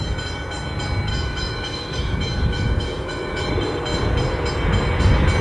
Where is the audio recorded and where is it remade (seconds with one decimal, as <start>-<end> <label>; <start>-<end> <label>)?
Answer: 0.0-1.1 recorded; 1.1-3.5 remade; 3.5-5.4 recorded